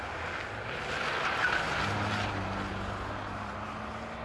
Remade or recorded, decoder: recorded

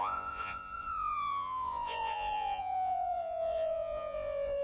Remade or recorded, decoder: remade, vocoder, Vocos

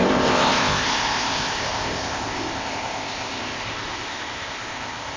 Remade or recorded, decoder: remade, codec, ZipCodec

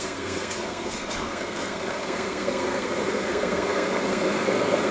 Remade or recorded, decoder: remade, codec, SNAC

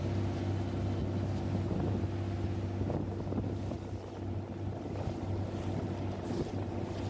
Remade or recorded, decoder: recorded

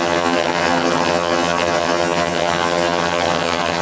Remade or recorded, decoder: remade, vocoder, HiFi-GAN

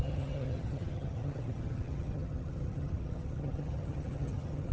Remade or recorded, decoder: remade, vocoder, HiFi-GAN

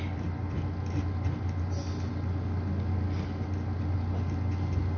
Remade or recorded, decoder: recorded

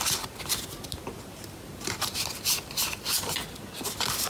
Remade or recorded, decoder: remade, vocoder, BigVGAN v2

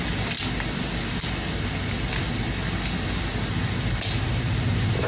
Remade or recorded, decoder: recorded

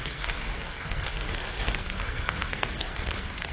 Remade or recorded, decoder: remade, codec, SNAC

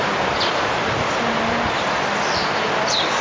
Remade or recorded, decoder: recorded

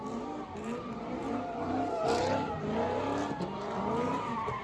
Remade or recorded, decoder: recorded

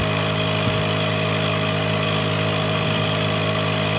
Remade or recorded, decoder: recorded